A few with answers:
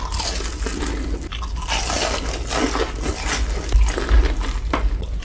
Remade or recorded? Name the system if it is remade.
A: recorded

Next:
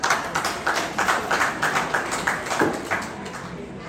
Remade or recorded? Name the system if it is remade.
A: recorded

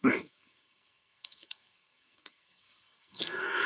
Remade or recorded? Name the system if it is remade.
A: remade, codec, SNAC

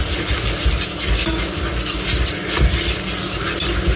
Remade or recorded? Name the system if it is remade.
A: recorded